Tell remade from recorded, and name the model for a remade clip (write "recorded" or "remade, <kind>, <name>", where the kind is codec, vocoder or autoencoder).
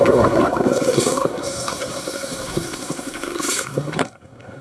remade, codec, SNAC